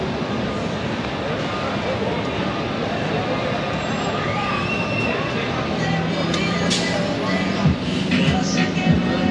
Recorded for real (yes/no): yes